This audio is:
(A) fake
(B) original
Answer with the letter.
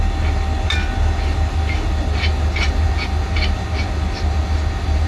B